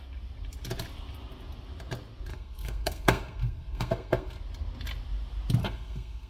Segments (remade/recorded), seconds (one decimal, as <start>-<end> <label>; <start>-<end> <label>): 0.0-2.3 recorded; 2.3-4.4 remade; 4.4-5.6 recorded; 5.6-6.3 remade